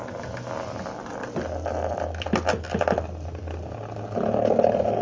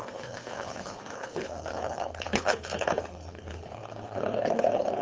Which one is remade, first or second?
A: second